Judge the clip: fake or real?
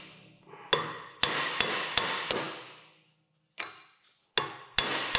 real